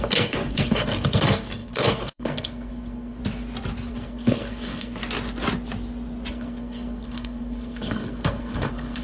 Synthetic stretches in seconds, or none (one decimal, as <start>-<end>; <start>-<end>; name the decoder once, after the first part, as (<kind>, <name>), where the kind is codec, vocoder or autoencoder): 0.0-3.2 (codec, SNAC); 3.9-5.0; 6.3-9.0